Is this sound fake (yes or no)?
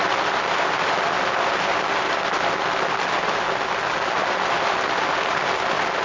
no